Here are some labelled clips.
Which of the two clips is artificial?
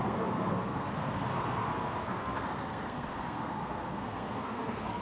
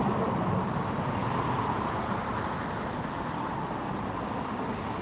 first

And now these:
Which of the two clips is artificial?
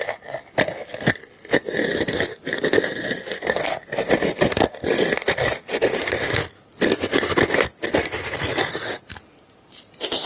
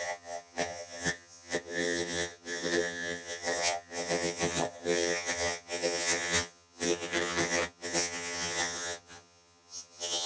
second